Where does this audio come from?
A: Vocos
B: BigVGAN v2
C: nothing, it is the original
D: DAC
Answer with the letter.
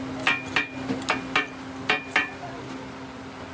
C